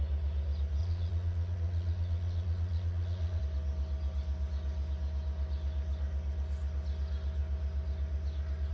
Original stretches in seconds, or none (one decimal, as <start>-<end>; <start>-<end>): 0.0-0.8; 3.4-8.7